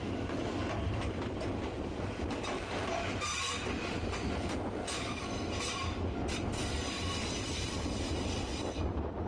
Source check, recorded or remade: recorded